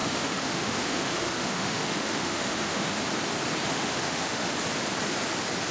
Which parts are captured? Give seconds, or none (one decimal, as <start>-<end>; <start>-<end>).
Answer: 3.0-3.7; 4.4-5.7